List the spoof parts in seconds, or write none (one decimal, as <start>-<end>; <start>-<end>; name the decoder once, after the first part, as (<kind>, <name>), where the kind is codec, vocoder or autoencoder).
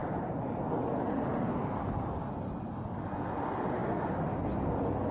none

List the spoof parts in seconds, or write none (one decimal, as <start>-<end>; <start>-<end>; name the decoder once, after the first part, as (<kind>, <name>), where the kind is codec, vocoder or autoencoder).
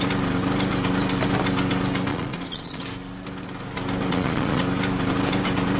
2.1-2.8 (vocoder, Vocos); 4.1-4.6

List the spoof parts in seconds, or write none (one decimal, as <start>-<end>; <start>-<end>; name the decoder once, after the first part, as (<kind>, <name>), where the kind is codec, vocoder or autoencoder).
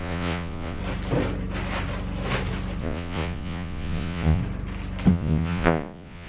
0.0-0.8 (vocoder, Vocos); 2.8-4.4; 5.1-6.3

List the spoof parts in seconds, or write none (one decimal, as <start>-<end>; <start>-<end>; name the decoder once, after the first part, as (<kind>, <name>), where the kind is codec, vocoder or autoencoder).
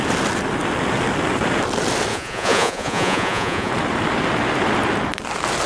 2.1-3.7 (vocoder, Vocos)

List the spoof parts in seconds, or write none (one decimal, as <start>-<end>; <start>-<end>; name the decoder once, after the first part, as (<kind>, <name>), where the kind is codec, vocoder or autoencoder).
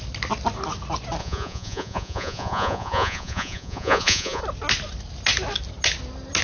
1.2-4.4 (vocoder, Vocos)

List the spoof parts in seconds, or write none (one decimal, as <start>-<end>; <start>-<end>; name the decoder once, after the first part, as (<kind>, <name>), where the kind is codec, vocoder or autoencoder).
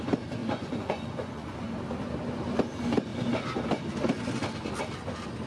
0.4-1.6 (vocoder, Vocos)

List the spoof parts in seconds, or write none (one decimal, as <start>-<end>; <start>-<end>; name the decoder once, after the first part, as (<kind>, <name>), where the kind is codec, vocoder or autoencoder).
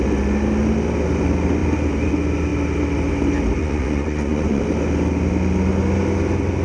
3.6-4.6 (vocoder, Vocos)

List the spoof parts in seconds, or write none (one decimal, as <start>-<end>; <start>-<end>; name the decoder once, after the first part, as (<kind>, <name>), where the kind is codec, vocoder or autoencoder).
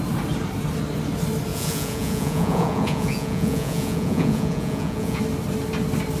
1.5-5.2 (vocoder, Vocos)